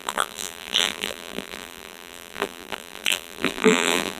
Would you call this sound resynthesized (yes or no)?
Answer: yes